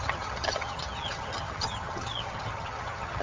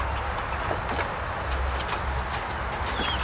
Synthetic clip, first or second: first